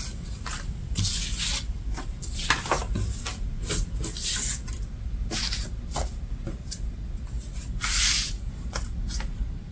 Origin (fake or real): real